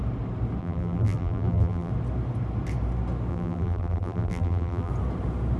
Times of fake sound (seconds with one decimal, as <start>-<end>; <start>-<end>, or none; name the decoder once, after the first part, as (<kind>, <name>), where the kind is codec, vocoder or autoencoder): 0.6-1.9 (vocoder, BigVGAN v2); 3.3-4.9